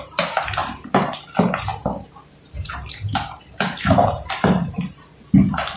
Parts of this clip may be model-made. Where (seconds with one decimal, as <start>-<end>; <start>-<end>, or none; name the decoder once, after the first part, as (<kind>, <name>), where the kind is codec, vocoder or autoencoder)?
0.6-1.2 (vocoder, BigVGAN v2); 1.7-5.2